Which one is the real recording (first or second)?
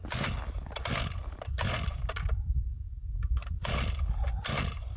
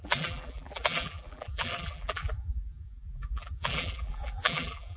first